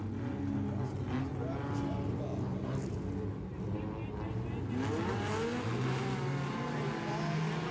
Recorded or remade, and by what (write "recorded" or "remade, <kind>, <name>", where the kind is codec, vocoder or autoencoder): recorded